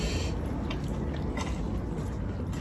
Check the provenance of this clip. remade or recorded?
recorded